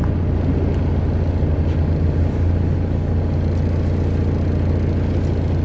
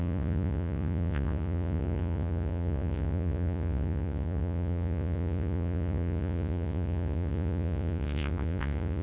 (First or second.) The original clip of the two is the first